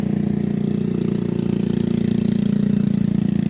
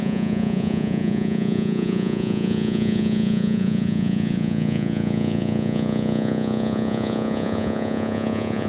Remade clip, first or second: second